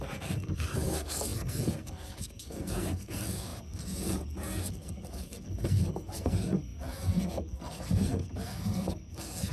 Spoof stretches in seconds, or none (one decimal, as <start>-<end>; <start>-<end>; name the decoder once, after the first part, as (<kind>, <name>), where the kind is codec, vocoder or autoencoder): 0.0-9.5 (codec, SNAC)